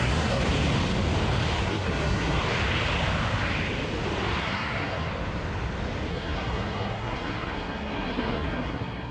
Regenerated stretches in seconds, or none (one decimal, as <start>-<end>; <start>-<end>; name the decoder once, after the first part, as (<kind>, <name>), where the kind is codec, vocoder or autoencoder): 0.0-0.4 (codec, SNAC); 1.6-2.4; 4.4-5.1; 6.1-9.1